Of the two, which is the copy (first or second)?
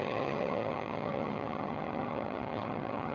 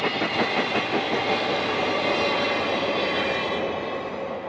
first